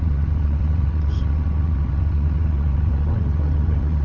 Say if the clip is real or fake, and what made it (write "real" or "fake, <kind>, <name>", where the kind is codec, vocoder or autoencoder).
fake, vocoder, WaveNeXt